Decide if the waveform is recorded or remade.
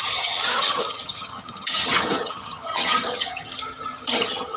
remade